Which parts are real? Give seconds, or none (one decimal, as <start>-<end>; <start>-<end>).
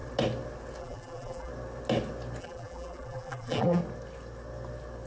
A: 0.0-0.8; 1.5-2.4; 3.8-5.1